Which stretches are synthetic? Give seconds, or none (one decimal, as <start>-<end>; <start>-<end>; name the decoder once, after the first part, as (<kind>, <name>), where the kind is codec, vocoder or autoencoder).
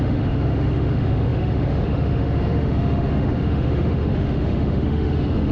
0.0-5.5 (autoencoder, DAC-VAE)